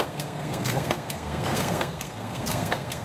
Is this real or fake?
fake